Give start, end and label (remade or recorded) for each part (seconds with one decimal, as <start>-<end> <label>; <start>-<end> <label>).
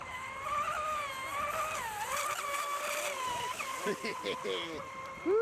0.0-1.1 remade; 1.1-3.4 recorded; 3.4-5.4 remade